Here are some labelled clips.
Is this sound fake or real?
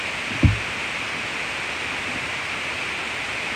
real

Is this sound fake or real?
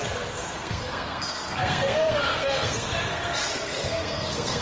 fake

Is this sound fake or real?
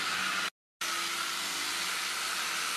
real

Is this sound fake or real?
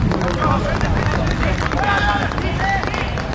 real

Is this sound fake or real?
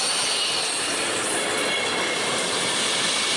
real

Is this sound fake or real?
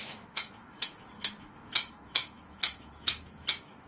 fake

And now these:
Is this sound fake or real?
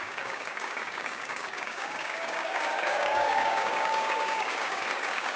fake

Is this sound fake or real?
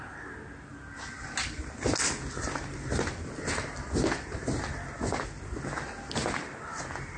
real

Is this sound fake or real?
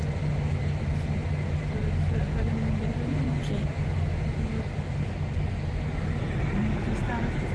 real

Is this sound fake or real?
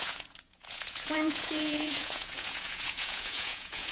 fake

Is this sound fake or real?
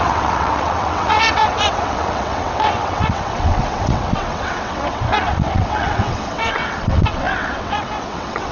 fake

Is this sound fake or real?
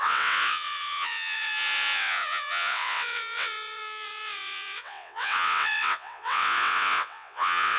fake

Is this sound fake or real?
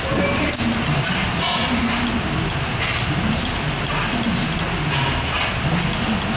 real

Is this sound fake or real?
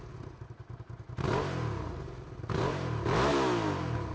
real